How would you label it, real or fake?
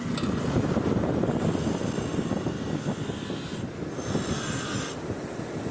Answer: real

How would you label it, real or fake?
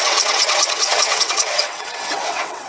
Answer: fake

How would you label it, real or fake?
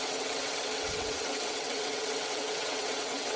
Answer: fake